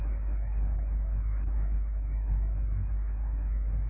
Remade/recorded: remade